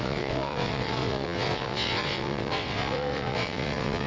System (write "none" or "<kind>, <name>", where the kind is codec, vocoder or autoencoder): vocoder, WaveNeXt